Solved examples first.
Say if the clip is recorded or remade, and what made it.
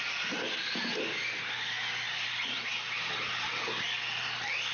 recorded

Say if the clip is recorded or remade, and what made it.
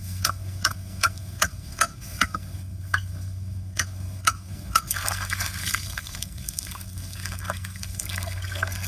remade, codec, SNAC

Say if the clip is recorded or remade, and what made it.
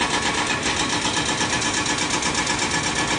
recorded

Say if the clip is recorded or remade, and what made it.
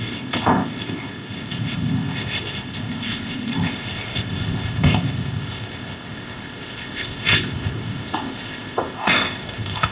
remade, codec, ZipCodec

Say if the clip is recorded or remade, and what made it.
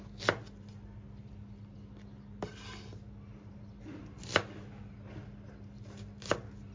recorded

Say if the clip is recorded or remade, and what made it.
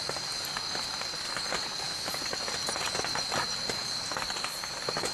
recorded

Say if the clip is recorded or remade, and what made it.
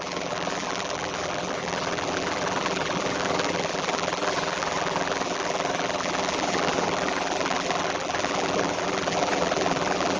remade, vocoder, BigVGAN v2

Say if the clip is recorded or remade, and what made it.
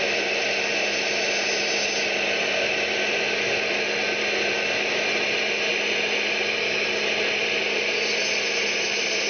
recorded